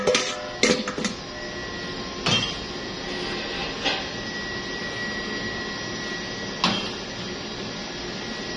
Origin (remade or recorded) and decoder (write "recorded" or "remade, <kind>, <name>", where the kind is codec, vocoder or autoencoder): recorded